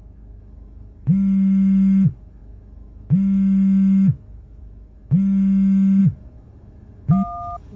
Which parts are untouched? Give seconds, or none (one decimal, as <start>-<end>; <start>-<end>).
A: none